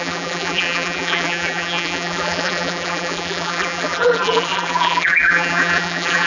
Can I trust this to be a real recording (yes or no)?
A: no